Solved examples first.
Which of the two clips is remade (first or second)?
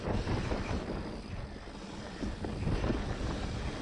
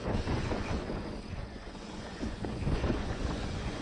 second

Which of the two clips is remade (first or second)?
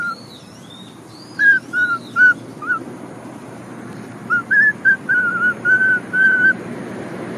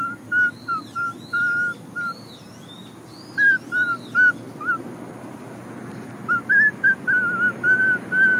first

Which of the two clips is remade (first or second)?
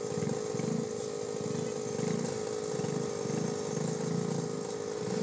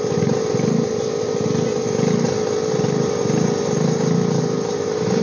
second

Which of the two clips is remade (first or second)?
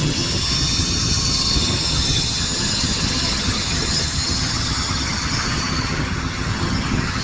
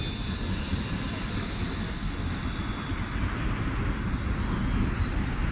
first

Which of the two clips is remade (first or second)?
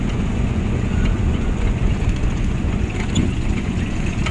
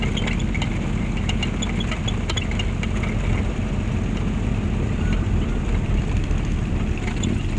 first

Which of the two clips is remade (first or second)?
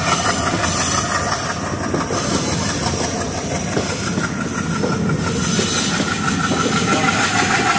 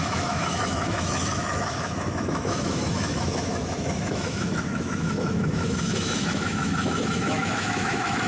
second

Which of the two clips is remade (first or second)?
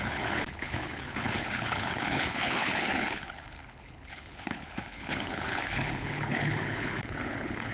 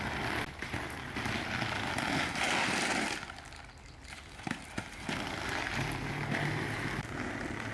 first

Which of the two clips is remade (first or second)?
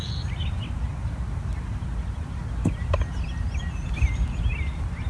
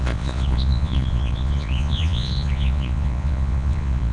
second